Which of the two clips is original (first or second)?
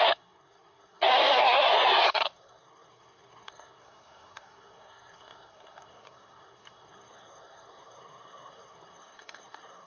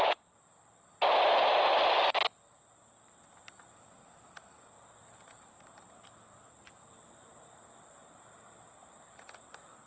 second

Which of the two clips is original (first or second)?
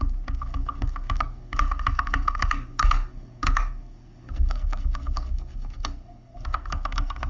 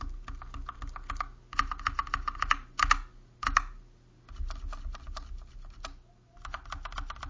second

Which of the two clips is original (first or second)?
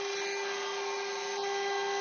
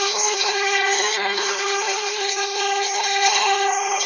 first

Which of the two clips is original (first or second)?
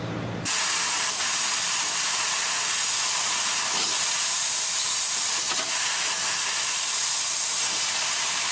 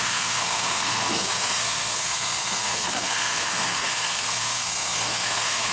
first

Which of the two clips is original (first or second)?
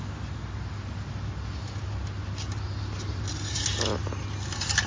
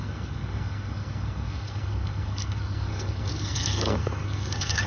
first